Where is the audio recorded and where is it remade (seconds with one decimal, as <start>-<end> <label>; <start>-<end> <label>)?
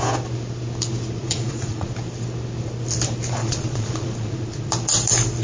0.0-1.2 recorded; 1.2-1.9 remade; 1.9-3.4 recorded; 3.4-4.7 remade; 4.7-5.4 recorded